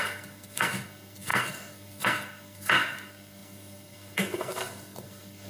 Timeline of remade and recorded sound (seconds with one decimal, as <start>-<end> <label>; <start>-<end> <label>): 0.0-5.5 remade

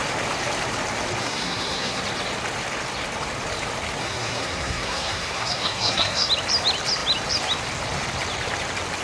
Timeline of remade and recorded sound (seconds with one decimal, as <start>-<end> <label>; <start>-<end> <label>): 0.0-1.2 recorded; 1.2-2.0 remade; 2.0-4.0 recorded; 4.0-6.3 remade; 6.3-9.0 recorded

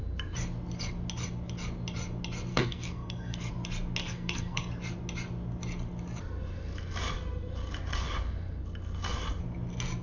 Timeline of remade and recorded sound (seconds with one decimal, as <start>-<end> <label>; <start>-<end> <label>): 0.0-2.5 recorded; 2.5-3.5 remade; 3.5-4.0 recorded; 4.0-4.6 remade; 4.6-10.0 recorded

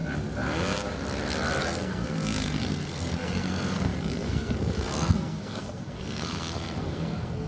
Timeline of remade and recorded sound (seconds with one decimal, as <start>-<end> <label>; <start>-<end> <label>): 0.0-1.6 recorded; 1.6-7.5 remade

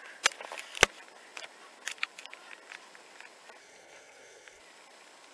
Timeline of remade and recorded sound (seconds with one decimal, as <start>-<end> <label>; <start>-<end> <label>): 0.0-3.6 recorded; 3.6-4.6 remade; 4.6-5.3 recorded

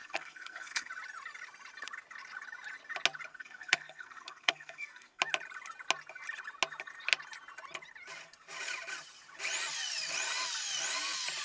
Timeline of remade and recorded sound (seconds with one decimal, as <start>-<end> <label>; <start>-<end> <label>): 0.0-0.9 remade; 0.9-3.3 recorded; 3.3-5.2 remade; 5.2-11.4 recorded

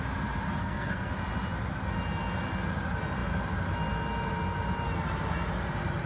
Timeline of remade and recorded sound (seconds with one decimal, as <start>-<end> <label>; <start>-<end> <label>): 0.0-0.6 recorded; 0.6-1.1 remade; 1.1-6.1 recorded